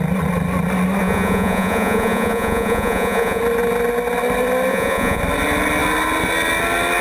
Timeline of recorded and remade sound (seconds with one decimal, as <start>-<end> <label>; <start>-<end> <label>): 0.0-1.0 recorded; 1.0-3.4 remade; 3.4-4.7 recorded; 4.7-5.2 remade; 5.2-7.0 recorded